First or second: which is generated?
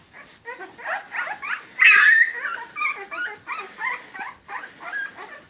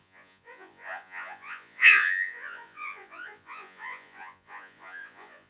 second